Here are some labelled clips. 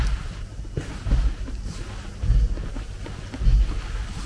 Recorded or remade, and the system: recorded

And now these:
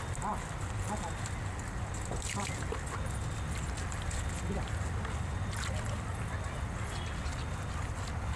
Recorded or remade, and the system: recorded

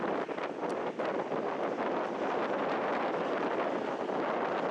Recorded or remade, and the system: recorded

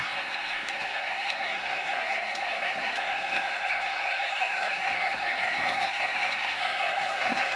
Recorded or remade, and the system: remade, codec, SNAC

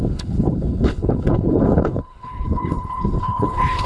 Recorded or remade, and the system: remade, codec, HILCodec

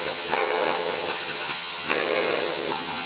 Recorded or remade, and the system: remade, vocoder, HiFi-GAN